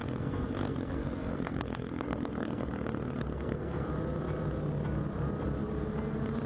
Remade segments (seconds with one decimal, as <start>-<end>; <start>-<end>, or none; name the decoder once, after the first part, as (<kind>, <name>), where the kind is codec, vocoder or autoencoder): 0.0-3.9 (codec, SNAC)